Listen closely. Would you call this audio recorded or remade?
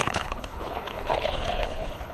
remade